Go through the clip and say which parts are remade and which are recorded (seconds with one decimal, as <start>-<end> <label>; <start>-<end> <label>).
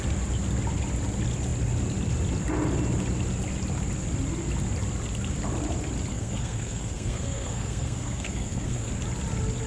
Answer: 0.0-6.1 recorded; 6.1-8.9 remade; 8.9-9.7 recorded